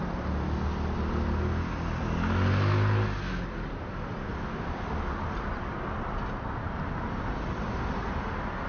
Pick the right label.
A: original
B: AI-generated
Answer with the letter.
A